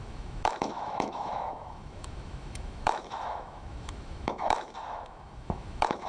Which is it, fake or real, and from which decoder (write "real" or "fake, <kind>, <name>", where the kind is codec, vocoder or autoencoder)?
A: fake, autoencoder, DAC-VAE